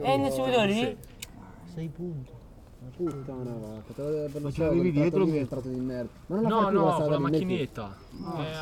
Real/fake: real